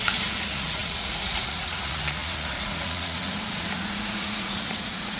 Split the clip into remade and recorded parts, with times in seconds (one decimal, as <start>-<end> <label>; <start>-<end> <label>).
0.0-5.2 remade